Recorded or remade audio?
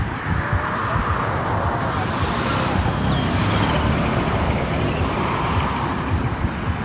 recorded